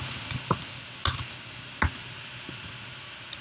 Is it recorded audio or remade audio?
recorded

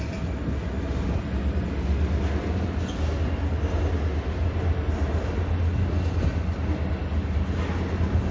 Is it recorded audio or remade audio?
recorded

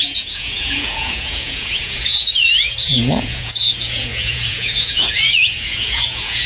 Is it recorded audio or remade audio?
remade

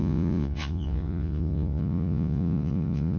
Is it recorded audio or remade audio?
remade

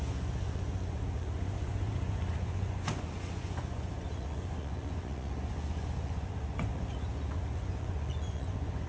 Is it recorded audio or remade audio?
remade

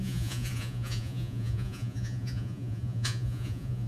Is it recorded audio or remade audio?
remade